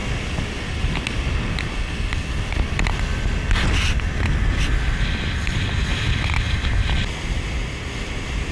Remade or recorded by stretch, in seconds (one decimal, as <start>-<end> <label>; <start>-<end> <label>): 0.0-8.5 recorded